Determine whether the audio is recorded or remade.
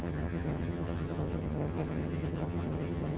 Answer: remade